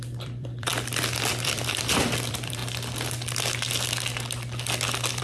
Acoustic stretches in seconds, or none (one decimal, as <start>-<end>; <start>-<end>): 0.7-1.3; 2.6-5.2